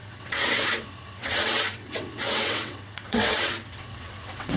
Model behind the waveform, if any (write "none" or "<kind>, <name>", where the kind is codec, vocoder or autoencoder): vocoder, WaveNeXt